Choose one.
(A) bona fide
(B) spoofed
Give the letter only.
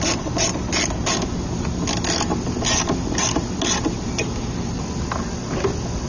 A